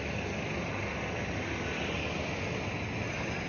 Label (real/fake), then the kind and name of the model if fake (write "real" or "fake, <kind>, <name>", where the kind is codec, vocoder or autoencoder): real